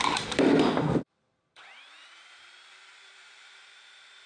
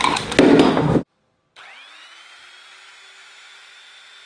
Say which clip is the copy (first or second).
first